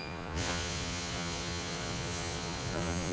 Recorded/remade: remade